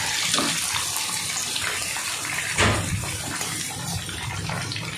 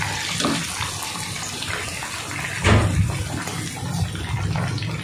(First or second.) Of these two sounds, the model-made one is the first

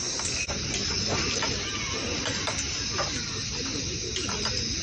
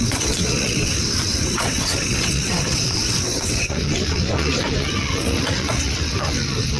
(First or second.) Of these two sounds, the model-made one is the second